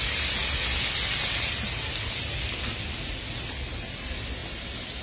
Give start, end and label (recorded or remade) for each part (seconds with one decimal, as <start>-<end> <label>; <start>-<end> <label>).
0.0-5.0 recorded